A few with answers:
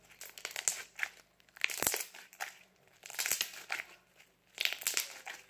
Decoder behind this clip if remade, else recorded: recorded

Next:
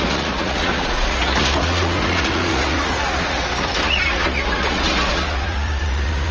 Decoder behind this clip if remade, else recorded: remade, vocoder, Vocos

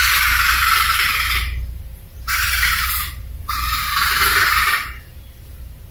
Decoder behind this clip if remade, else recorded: remade, vocoder, BigVGAN v2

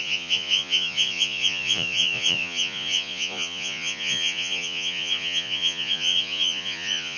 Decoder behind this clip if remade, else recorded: remade, vocoder, Vocos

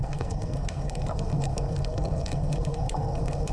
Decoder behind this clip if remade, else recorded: remade, codec, SNAC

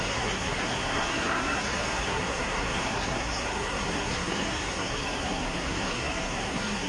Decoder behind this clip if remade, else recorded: remade, codec, SNAC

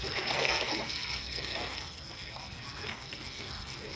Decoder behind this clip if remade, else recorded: remade, codec, SNAC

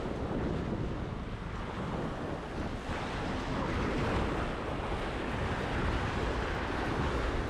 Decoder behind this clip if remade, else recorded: recorded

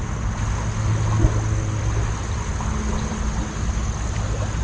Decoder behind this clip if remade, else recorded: recorded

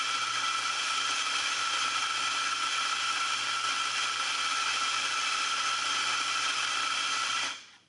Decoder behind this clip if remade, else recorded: recorded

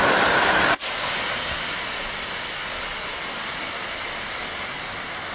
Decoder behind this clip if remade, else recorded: recorded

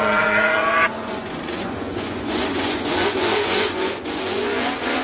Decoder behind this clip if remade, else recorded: remade, vocoder, Vocos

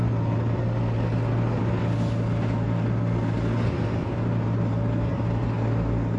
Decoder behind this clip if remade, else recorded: recorded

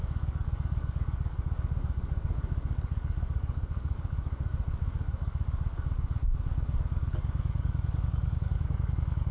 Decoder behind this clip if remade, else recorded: remade, codec, DAC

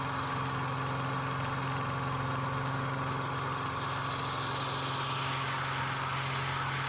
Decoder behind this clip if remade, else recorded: recorded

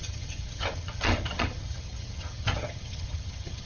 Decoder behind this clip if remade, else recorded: remade, vocoder, HiFi-GAN